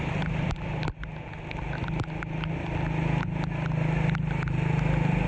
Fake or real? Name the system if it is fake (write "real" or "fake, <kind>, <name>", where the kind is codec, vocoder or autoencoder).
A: real